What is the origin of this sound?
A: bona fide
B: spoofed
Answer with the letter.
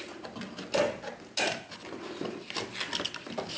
A